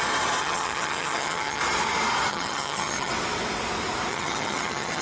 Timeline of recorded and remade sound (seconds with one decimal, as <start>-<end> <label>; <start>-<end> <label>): 0.0-0.4 recorded; 0.4-1.6 remade; 1.6-2.3 recorded; 2.3-3.1 remade; 3.1-4.1 recorded; 4.1-5.0 remade